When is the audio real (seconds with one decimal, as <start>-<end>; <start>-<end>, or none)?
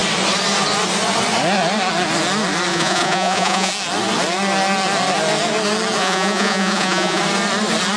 0.0-2.7; 3.7-6.0; 7.2-8.0